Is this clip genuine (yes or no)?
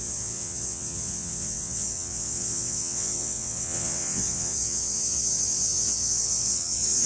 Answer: no